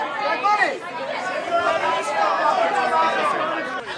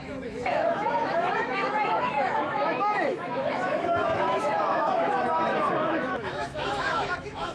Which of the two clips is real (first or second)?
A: first